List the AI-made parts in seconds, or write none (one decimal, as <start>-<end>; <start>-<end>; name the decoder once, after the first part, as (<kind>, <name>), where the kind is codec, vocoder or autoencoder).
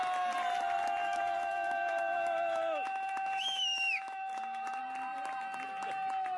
1.0-4.8 (autoencoder, DAC-VAE)